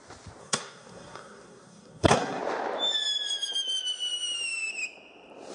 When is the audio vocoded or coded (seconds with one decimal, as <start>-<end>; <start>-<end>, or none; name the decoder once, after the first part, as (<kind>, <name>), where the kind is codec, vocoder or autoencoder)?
0.4-2.4 (codec, SNAC)

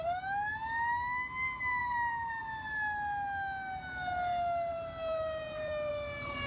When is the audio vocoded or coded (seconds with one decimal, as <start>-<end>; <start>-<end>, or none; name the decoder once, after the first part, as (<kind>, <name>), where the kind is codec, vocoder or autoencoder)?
1.8-2.4 (vocoder, BigVGAN v2); 4.7-5.9

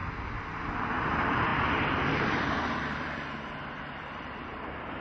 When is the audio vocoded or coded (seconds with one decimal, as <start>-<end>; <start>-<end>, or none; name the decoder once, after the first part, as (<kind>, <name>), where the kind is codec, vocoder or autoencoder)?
0.9-5.0 (vocoder, BigVGAN v2)

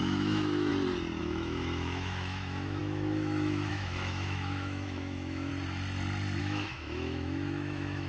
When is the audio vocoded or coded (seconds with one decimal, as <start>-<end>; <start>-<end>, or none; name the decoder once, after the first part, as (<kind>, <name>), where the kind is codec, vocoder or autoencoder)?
0.0-0.7 (autoencoder, DAC-VAE); 1.2-5.5; 6.4-8.1

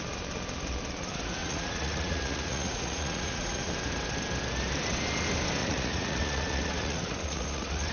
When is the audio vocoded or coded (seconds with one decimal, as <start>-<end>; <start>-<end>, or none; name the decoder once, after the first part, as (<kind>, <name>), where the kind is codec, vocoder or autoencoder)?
1.4-3.7 (vocoder, Vocos); 5.6-7.9

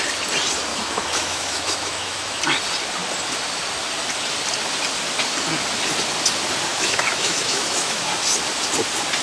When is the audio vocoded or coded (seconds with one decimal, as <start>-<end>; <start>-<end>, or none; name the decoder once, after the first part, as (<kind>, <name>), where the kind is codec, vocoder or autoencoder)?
0.7-2.4 (autoencoder, DAC-VAE); 6.7-8.0